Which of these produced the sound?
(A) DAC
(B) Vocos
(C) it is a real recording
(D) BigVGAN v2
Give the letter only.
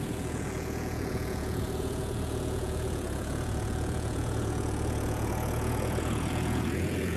B